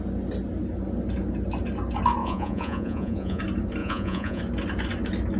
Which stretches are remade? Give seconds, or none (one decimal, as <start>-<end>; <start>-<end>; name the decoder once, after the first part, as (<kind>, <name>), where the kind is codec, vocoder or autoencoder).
2.2-3.4 (vocoder, Vocos); 3.8-4.4